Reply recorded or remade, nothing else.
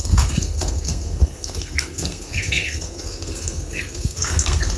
remade